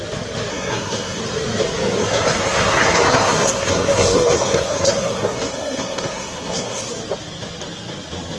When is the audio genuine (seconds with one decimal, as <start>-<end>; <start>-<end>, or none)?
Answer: 0.0-0.5; 1.2-2.0; 6.8-8.4